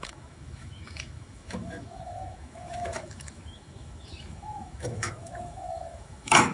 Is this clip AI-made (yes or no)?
yes